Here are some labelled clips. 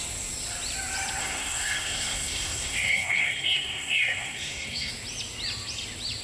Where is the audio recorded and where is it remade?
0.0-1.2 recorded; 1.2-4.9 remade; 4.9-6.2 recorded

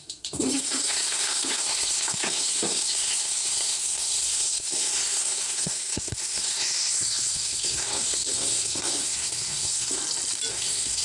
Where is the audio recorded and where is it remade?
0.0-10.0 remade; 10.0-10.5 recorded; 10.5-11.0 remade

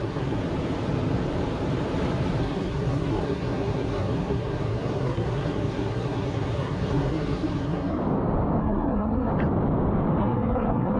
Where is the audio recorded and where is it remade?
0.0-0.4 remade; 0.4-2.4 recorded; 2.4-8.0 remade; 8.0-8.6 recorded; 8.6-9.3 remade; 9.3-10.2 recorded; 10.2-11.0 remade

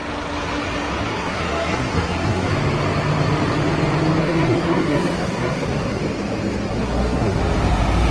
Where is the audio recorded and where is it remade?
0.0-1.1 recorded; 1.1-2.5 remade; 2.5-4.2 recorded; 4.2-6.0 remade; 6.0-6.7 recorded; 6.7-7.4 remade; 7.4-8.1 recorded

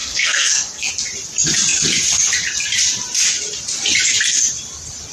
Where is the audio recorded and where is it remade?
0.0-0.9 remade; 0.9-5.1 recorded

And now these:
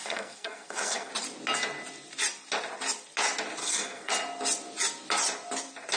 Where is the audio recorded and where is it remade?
0.0-1.1 remade; 1.1-3.6 recorded; 3.6-4.1 remade; 4.1-6.0 recorded

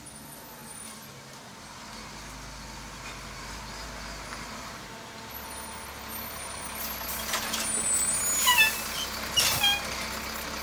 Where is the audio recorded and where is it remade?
0.0-10.6 recorded